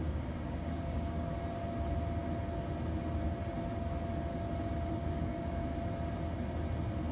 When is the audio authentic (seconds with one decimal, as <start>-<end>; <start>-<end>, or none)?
1.3-4.9; 5.6-7.1

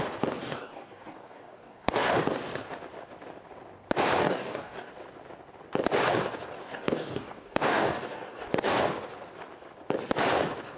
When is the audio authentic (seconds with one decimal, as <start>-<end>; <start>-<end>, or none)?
0.0-0.4; 2.2-4.2; 4.9-6.6; 8.8-10.8

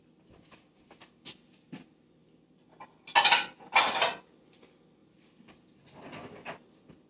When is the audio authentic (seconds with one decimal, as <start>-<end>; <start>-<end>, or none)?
0.0-7.1

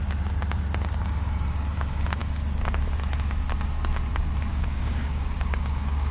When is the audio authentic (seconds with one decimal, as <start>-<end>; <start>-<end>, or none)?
0.0-4.5

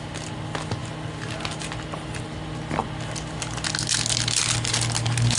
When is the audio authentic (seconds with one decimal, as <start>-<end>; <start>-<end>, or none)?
0.0-5.4

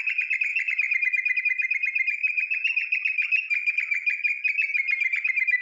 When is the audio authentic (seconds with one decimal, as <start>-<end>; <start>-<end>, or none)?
0.0-5.6